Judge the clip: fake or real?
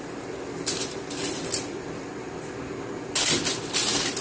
real